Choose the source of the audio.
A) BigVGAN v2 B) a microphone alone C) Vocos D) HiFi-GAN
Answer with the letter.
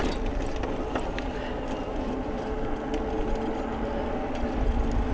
B